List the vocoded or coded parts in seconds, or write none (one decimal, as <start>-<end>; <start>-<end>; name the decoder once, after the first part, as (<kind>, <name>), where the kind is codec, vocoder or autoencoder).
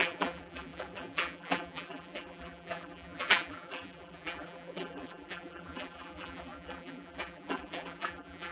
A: 0.0-8.5 (vocoder, BigVGAN v2)